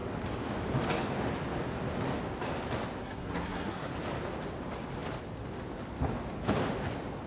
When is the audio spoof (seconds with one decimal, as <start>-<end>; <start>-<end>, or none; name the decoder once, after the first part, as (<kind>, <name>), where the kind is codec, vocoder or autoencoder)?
3.0-3.9 (codec, SNAC)